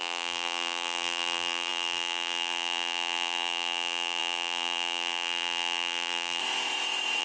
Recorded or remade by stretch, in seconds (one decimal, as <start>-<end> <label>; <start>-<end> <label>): 0.0-6.4 remade; 6.4-7.2 recorded

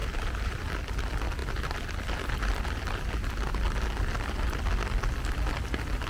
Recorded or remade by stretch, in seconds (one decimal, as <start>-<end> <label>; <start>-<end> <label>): 0.0-0.7 remade; 0.7-6.1 recorded

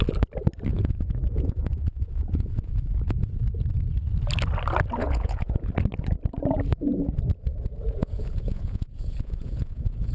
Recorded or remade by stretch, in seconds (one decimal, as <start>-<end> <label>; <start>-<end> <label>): 0.0-0.7 recorded; 0.7-3.3 remade; 3.3-5.0 recorded; 5.0-5.7 remade; 5.7-8.0 recorded; 8.0-10.1 remade

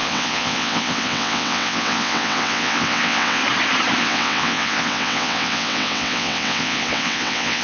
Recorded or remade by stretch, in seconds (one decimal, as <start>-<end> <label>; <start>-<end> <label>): 0.0-3.4 remade; 3.4-4.0 recorded; 4.0-7.6 remade

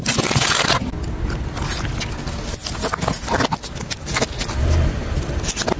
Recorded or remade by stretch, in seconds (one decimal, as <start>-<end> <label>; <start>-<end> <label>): 0.0-5.8 recorded

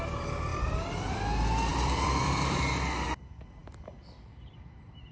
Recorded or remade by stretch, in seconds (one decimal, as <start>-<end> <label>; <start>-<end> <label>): 0.0-0.5 recorded; 0.5-1.2 remade; 1.2-1.7 recorded; 1.7-2.6 remade; 2.6-3.6 recorded; 3.6-5.1 remade